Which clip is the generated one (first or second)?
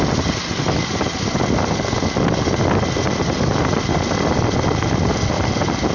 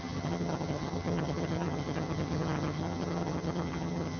second